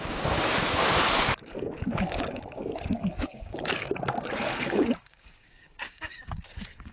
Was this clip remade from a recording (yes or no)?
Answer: yes